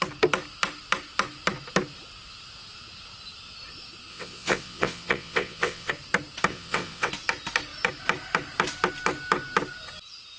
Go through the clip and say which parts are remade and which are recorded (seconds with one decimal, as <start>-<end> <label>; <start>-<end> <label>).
0.0-4.1 recorded; 4.1-5.9 remade; 5.9-6.5 recorded; 6.5-7.1 remade; 7.1-10.4 recorded